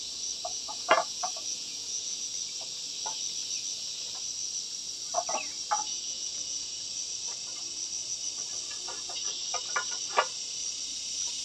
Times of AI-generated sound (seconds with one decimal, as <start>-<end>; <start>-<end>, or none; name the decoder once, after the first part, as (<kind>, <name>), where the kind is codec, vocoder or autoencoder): 0.5-2.3 (vocoder, Vocos); 5.9-6.8